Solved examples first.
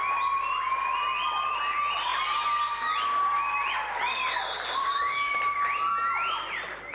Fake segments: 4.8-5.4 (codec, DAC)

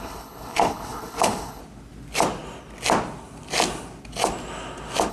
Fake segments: 0.0-1.6 (codec, HILCodec)

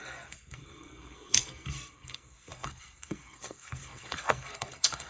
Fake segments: 0.0-5.1 (codec, SNAC)